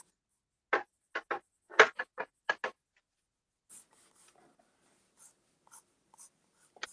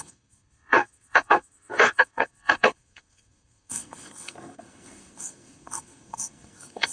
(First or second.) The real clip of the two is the first